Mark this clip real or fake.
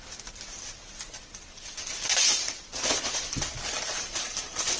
real